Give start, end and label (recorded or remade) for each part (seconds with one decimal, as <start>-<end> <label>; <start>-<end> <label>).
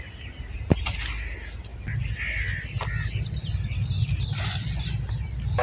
0.0-5.6 recorded